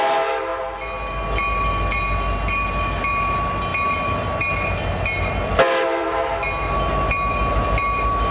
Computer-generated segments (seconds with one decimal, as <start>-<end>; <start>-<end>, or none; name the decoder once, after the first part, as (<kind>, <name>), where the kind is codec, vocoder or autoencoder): none